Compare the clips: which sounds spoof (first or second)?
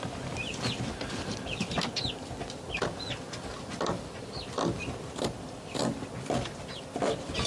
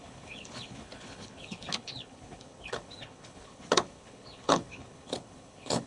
second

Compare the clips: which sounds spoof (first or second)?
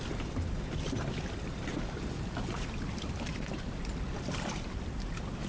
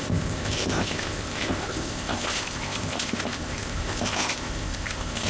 second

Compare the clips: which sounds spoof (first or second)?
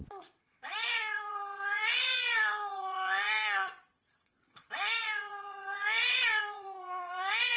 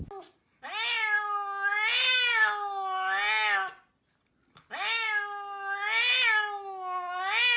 first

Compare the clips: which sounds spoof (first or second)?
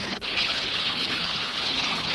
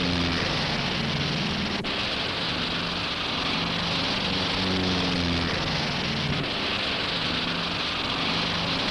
first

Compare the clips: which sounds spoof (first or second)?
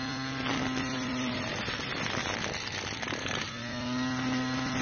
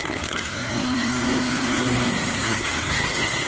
second